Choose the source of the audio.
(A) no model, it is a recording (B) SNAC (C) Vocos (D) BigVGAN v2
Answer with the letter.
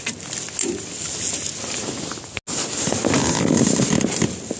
A